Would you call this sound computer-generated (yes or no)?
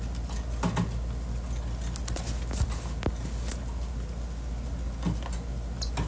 no